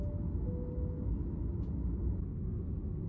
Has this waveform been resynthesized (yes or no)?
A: no